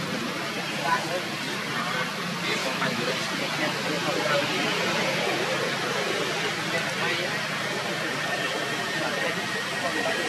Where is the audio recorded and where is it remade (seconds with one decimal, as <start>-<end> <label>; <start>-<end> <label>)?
0.0-2.6 recorded; 2.6-3.1 remade; 3.1-10.3 recorded